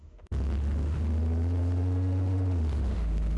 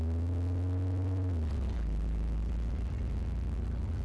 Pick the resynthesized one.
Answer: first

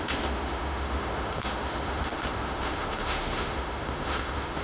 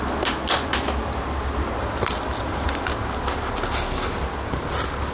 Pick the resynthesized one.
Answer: first